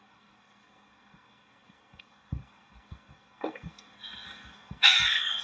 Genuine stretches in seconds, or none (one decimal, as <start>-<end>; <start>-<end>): none

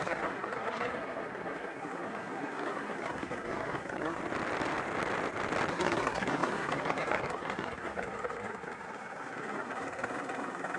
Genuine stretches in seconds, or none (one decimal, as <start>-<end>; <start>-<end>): 4.2-5.7

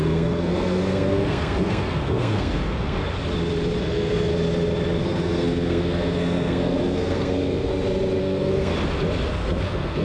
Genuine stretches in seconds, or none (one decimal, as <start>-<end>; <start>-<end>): 3.0-3.8; 4.3-5.0; 7.7-8.2; 8.7-9.3

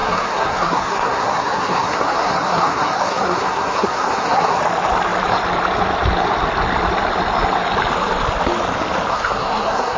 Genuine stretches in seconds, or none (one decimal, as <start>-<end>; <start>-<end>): 4.6-9.1

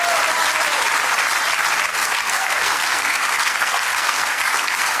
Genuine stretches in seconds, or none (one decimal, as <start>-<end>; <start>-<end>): 0.0-1.9

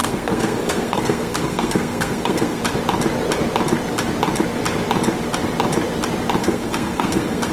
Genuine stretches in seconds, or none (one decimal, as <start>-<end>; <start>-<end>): 2.6-6.4

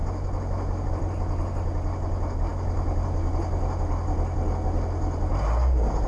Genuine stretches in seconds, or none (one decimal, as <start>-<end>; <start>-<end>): 0.0-6.1